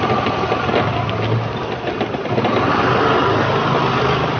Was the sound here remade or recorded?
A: recorded